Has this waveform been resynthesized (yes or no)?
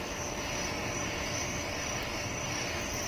no